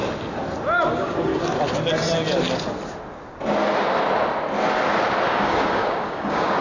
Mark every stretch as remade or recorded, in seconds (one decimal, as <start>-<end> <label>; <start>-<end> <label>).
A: 0.0-0.9 recorded; 0.9-1.3 remade; 1.3-5.3 recorded; 5.3-6.6 remade